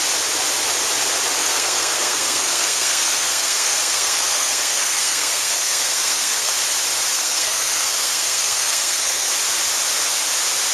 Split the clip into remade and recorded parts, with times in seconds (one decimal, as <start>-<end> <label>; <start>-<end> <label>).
0.0-1.4 recorded; 1.4-6.5 remade; 6.5-7.1 recorded; 7.1-9.3 remade; 9.3-10.7 recorded

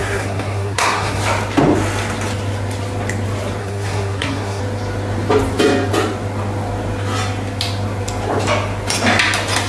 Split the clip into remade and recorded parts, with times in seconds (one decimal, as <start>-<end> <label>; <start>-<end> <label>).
0.0-1.2 remade; 1.2-3.6 recorded; 3.6-4.6 remade; 4.6-9.7 recorded